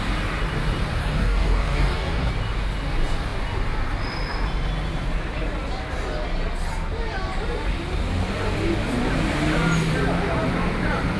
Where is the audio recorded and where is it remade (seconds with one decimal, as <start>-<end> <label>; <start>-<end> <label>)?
0.0-1.0 recorded; 1.0-2.3 remade; 2.3-11.2 recorded